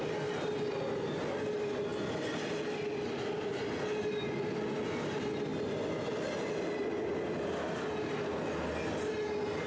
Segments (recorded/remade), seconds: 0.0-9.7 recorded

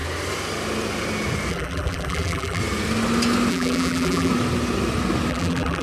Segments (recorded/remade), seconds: 0.0-1.5 recorded; 1.5-2.6 remade; 2.6-3.5 recorded; 3.5-4.3 remade; 4.3-5.3 recorded; 5.3-5.8 remade

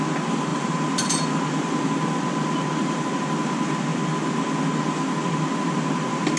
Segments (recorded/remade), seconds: 0.0-0.5 recorded; 0.5-1.8 remade; 1.8-6.4 recorded

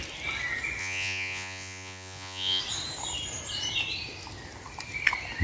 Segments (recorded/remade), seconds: 0.0-0.8 recorded; 0.8-2.6 remade; 2.6-5.4 recorded

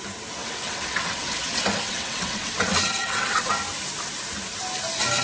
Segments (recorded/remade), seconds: 0.0-0.4 recorded; 0.4-3.5 remade; 3.5-5.2 recorded

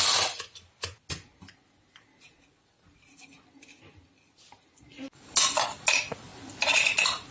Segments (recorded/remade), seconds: 0.0-7.3 recorded

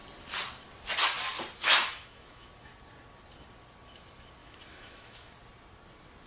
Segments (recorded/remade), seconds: 0.0-1.7 recorded; 1.7-2.5 remade; 2.5-4.4 recorded; 4.4-5.3 remade; 5.3-6.3 recorded